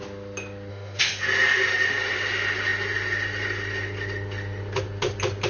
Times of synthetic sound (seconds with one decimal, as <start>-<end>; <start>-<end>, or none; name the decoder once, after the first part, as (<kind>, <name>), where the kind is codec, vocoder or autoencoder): 0.7-1.2 (autoencoder, DAC-VAE)